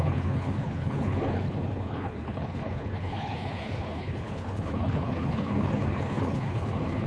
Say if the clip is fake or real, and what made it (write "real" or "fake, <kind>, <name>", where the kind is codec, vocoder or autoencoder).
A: fake, codec, HILCodec